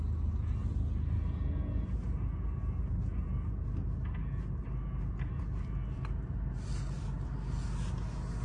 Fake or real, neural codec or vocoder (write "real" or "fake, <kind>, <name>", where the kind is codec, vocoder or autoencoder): real